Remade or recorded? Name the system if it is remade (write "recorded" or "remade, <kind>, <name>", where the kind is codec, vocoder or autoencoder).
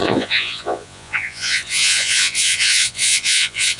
remade, vocoder, Vocos